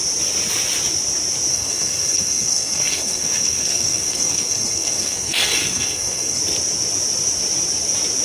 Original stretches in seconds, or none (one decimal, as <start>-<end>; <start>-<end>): 0.0-1.5; 6.4-8.2